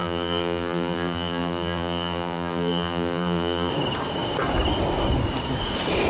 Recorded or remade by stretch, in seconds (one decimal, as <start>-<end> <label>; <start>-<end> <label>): 0.0-3.7 remade; 3.7-6.1 recorded